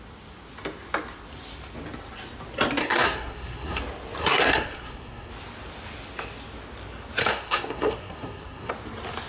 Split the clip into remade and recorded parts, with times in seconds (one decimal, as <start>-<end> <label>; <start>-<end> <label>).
0.0-2.8 recorded; 2.8-3.8 remade; 3.8-4.2 recorded; 4.2-5.3 remade; 5.3-7.2 recorded; 7.2-8.7 remade; 8.7-9.3 recorded